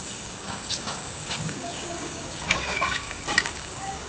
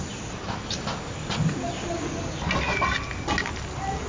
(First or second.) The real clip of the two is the second